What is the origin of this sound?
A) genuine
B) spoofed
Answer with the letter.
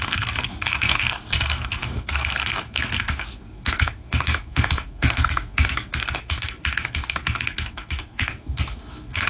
B